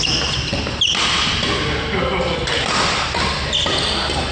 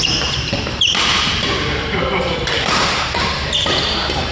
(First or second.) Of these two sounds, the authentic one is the first